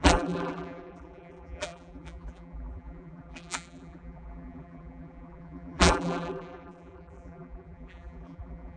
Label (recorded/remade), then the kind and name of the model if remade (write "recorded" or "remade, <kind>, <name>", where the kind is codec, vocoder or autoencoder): remade, vocoder, BigVGAN v2